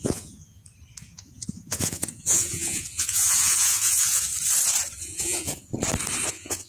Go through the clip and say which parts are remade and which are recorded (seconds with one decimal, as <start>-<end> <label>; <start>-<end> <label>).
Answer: 0.0-0.6 remade; 0.6-1.1 recorded; 1.1-4.3 remade; 4.3-5.0 recorded; 5.0-5.7 remade; 5.7-6.3 recorded; 6.3-6.7 remade